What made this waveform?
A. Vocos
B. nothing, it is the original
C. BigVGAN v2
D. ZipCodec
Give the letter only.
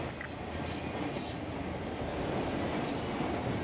B